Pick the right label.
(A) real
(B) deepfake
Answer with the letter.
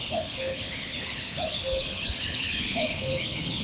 B